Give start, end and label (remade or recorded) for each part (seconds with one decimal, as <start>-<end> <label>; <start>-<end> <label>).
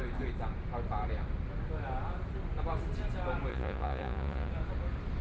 0.0-3.5 recorded; 3.5-4.5 remade; 4.5-5.2 recorded